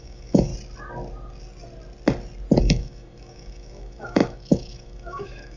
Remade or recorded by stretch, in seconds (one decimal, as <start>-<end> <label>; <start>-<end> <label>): 0.0-0.5 remade; 0.5-2.6 recorded; 2.6-5.6 remade